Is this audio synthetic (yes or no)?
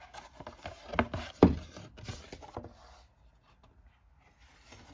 no